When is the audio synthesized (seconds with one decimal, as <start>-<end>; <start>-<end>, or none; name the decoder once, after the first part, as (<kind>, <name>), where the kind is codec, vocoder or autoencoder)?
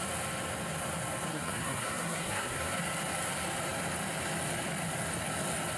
1.3-2.8 (codec, SNAC)